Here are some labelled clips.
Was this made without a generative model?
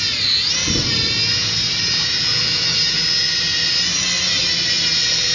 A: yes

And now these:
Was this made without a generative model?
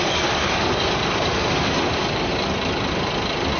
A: yes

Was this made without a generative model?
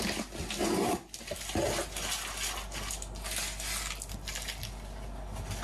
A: yes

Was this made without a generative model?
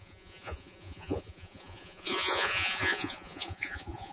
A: no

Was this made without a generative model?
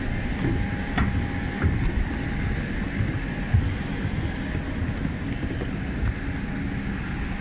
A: yes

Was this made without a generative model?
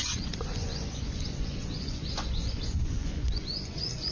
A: no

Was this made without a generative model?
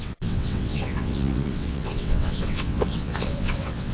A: no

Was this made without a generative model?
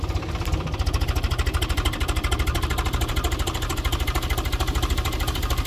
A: no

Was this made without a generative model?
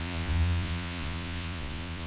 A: no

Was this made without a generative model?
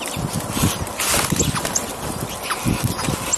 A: yes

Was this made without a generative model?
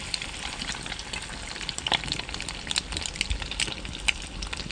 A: yes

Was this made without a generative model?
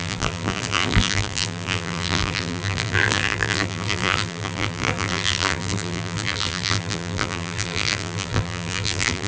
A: no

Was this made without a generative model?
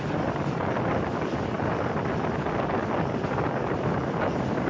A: yes